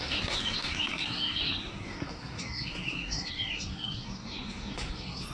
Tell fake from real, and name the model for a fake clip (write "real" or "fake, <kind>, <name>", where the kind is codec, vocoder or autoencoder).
fake, codec, SNAC